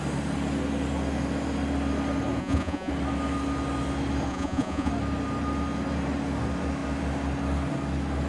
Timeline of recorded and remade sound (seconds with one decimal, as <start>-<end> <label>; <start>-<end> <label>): 0.0-2.4 recorded; 2.4-2.9 remade; 2.9-4.3 recorded; 4.3-4.9 remade; 4.9-8.3 recorded